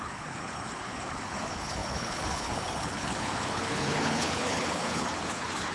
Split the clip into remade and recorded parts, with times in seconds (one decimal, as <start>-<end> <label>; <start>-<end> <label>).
0.0-5.7 remade